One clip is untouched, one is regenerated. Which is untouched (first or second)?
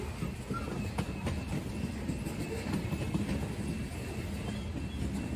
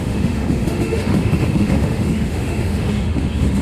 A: first